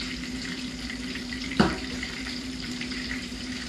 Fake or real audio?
fake